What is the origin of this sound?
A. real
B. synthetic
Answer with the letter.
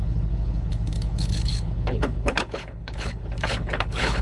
B